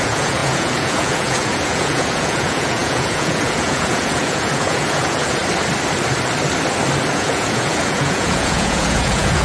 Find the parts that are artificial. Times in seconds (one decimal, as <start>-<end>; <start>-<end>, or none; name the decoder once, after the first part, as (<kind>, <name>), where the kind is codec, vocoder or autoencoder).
0.0-5.4 (vocoder, Vocos); 7.1-9.4